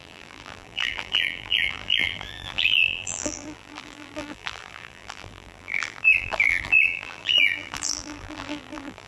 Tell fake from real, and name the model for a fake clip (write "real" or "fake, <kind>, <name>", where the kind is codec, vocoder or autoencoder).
fake, vocoder, BigVGAN v2